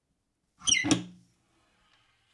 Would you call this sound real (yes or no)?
yes